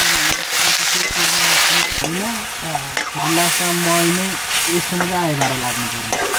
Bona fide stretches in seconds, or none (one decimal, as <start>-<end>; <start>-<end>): 0.0-3.2; 4.1-6.4